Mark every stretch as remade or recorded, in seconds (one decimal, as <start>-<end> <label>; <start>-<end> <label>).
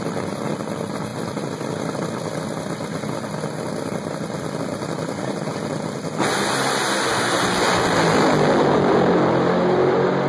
0.0-10.3 recorded